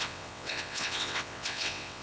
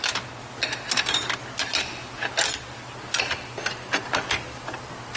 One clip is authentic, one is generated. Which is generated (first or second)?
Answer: first